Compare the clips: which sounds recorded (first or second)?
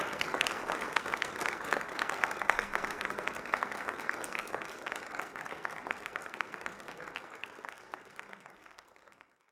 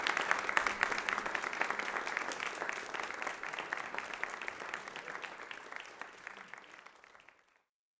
second